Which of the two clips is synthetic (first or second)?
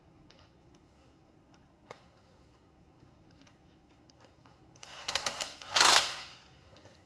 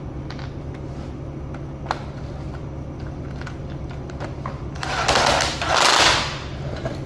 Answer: first